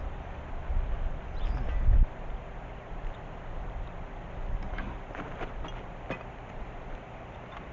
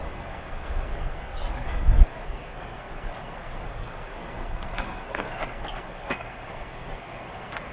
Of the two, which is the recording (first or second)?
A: first